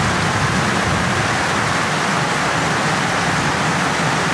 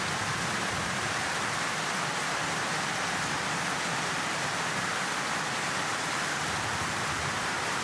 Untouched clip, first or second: first